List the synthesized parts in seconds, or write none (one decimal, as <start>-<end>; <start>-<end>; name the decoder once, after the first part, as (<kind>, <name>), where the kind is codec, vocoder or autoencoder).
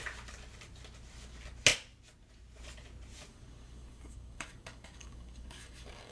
3.3-6.1 (codec, DAC)